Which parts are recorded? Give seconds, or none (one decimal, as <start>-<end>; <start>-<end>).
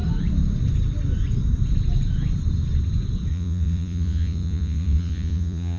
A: 0.0-3.3